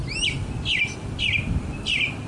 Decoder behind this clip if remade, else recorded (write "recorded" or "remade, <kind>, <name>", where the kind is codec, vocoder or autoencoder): recorded